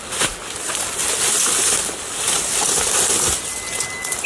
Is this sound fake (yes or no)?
no